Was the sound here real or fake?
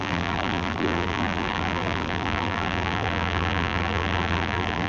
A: fake